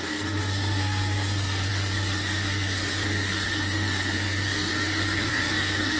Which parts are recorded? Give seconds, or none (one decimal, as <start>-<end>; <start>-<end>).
none